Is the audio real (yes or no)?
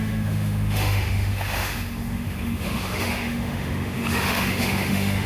no